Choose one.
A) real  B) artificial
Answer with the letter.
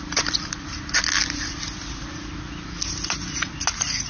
A